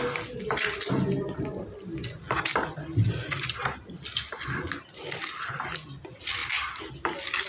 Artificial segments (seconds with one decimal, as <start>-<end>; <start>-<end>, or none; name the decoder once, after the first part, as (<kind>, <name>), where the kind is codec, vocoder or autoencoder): none